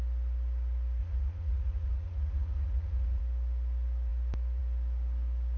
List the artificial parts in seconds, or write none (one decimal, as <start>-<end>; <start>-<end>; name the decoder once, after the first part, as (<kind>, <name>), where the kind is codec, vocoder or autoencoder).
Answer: 1.0-3.2 (vocoder, Vocos)